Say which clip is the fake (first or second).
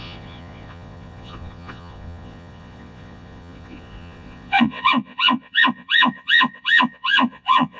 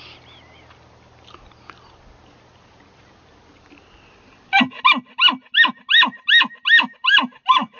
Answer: first